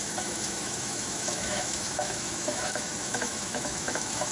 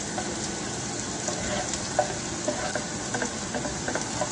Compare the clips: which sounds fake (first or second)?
first